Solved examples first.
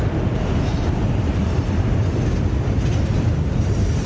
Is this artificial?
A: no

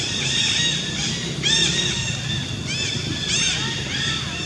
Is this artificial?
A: yes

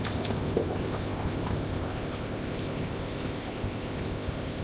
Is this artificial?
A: yes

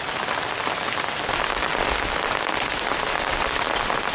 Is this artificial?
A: no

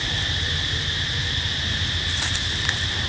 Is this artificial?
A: no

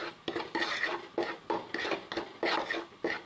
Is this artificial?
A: no